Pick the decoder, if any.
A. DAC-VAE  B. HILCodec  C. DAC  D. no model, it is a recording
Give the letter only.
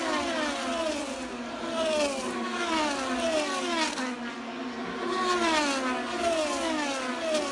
D